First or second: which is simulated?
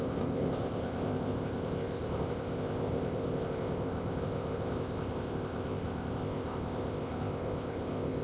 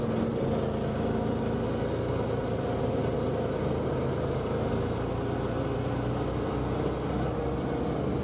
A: first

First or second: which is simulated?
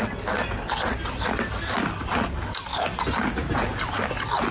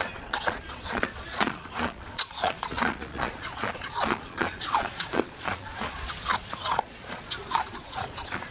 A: second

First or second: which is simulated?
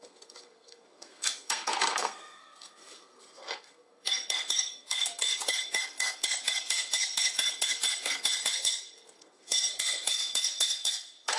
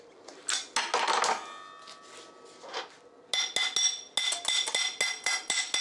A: first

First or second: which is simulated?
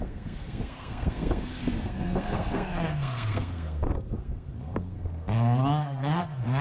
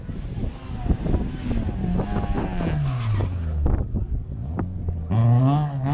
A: first